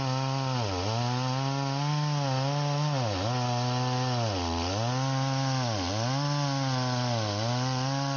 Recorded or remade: recorded